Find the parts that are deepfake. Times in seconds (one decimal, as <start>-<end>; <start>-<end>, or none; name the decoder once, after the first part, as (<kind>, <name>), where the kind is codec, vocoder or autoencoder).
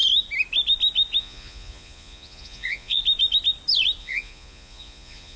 1.2-3.0 (vocoder, Vocos); 4.0-5.4